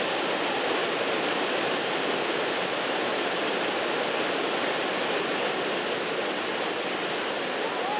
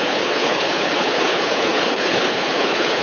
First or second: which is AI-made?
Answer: second